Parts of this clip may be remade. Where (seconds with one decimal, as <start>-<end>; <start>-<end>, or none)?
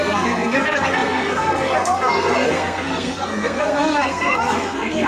0.0-5.1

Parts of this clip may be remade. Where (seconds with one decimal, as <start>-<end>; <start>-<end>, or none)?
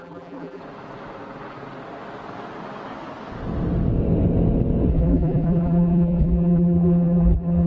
0.0-0.6; 4.9-7.7